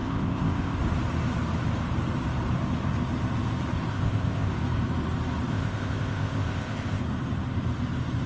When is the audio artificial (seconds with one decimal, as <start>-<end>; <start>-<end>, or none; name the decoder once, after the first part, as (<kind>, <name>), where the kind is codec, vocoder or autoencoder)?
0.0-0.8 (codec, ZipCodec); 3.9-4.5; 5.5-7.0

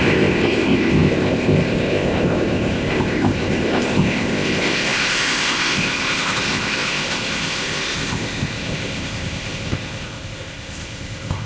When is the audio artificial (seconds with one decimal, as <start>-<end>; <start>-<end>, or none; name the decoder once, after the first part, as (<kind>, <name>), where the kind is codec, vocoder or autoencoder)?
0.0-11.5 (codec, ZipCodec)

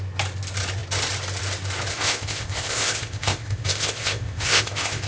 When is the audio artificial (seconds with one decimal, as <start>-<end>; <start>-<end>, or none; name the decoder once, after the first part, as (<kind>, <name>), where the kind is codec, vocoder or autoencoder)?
1.9-5.1 (codec, ZipCodec)